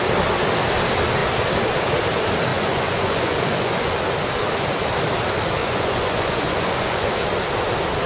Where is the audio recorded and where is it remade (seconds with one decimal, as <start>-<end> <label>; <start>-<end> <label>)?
0.0-2.5 recorded; 2.5-3.9 remade; 3.9-5.6 recorded; 5.6-7.1 remade; 7.1-8.1 recorded